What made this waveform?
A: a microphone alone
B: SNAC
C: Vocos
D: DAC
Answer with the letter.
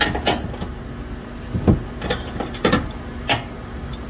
A